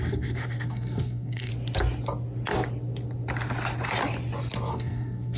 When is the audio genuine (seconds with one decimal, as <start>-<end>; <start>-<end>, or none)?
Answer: 1.5-4.7